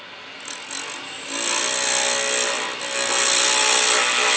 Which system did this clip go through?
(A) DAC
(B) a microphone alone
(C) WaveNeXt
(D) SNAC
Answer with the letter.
B